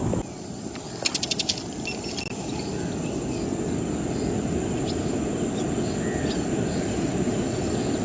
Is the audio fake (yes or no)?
no